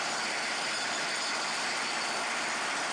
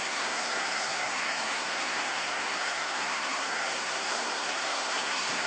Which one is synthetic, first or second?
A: second